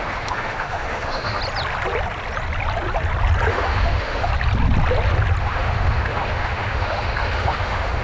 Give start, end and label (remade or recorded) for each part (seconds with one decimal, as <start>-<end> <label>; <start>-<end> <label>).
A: 0.0-1.4 remade; 1.4-3.5 recorded; 3.5-4.3 remade; 4.3-5.4 recorded; 5.4-8.0 remade